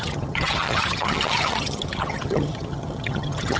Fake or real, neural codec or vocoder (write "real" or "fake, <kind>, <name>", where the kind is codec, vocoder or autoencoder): fake, vocoder, HiFi-GAN